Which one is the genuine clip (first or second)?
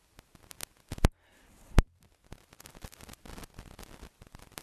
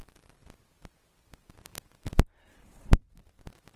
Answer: first